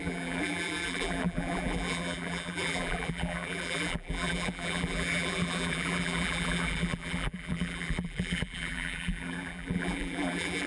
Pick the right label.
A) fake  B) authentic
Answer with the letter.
A